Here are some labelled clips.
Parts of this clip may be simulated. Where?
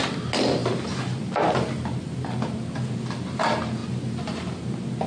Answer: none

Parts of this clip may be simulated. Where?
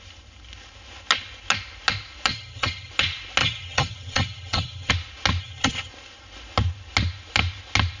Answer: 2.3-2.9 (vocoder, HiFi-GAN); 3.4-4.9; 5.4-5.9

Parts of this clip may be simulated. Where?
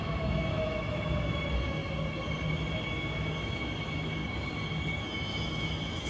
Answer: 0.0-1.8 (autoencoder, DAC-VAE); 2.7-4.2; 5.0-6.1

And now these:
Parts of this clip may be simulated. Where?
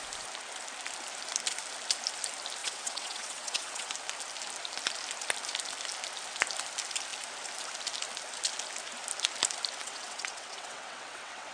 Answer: 2.6-3.9 (vocoder, WaveNeXt); 9.8-11.5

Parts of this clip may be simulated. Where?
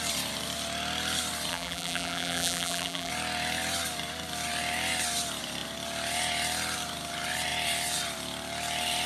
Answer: 1.5-3.1 (vocoder, BigVGAN v2)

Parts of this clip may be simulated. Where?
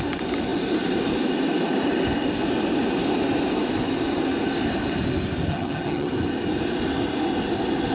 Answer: 5.5-6.1 (vocoder, HiFi-GAN)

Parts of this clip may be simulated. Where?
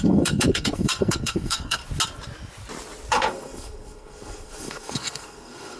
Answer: 0.0-1.8 (codec, SNAC); 3.1-5.8